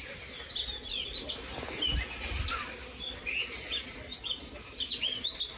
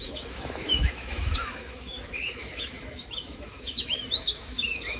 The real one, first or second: first